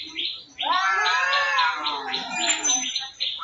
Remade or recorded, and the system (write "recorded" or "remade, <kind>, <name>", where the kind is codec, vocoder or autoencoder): remade, vocoder, BigVGAN v2